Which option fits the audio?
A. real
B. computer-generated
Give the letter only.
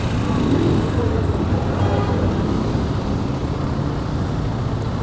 A